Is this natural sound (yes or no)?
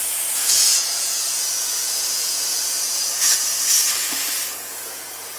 no